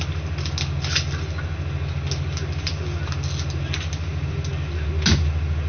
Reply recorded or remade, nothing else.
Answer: recorded